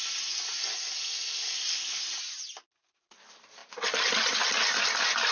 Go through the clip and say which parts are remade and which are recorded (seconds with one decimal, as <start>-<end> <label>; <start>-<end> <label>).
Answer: 0.0-5.3 recorded